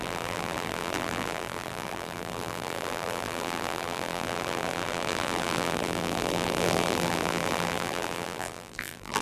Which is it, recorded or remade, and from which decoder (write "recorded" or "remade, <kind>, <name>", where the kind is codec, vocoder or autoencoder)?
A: remade, vocoder, BigVGAN v2